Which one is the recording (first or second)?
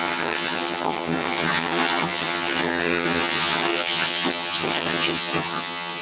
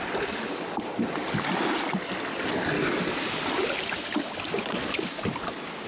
second